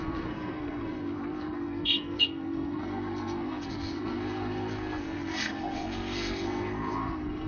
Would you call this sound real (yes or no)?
no